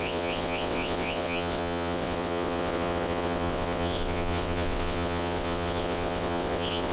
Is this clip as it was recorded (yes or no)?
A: no